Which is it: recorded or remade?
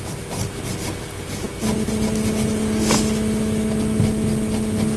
recorded